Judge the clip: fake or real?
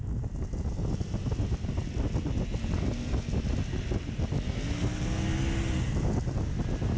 real